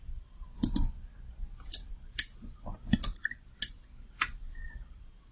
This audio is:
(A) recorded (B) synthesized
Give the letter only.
A